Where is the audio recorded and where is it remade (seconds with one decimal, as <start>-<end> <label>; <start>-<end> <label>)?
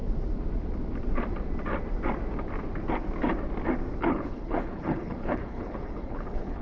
0.0-4.0 recorded; 4.0-6.6 remade